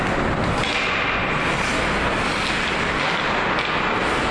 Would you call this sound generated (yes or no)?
no